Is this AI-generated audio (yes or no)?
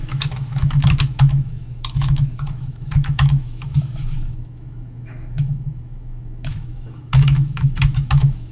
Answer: yes